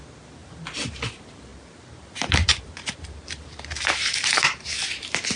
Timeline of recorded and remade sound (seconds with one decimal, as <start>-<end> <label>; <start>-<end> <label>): 0.0-1.5 recorded; 1.5-4.7 remade; 4.7-5.4 recorded